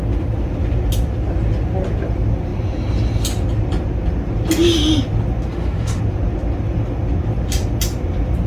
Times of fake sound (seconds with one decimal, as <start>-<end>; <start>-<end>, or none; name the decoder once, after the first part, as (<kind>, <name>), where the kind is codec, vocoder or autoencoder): 5.5-6.0 (autoencoder, DAC-VAE)